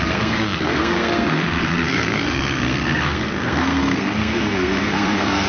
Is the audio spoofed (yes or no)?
yes